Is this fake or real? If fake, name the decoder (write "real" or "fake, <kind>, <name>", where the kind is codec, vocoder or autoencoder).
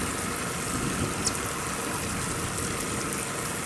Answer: real